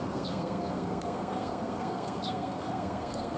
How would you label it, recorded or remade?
remade